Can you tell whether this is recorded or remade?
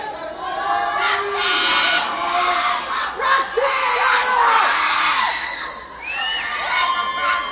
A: recorded